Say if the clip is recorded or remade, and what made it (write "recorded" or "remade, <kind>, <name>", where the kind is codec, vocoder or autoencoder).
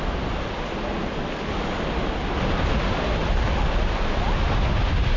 recorded